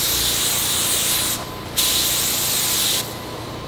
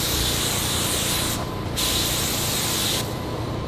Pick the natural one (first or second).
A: first